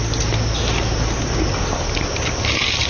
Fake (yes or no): no